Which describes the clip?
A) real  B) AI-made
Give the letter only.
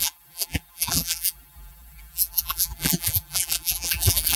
B